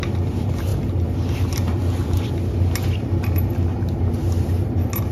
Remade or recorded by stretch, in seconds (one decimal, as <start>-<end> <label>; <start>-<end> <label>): 0.0-5.1 recorded